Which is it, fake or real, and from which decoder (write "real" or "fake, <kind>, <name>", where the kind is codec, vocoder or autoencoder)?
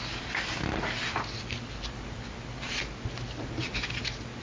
real